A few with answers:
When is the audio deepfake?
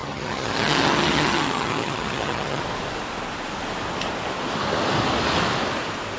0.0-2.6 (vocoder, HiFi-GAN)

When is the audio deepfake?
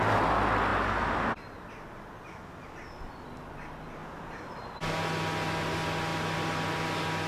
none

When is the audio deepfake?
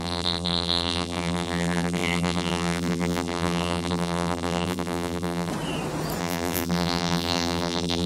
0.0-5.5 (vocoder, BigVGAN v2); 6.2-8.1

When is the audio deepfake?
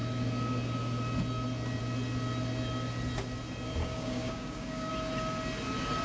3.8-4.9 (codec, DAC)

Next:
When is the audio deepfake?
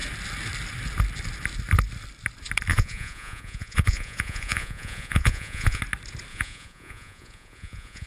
2.7-5.8 (vocoder, Vocos); 6.3-8.1